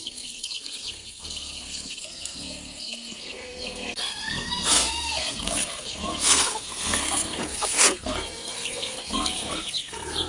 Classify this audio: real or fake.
fake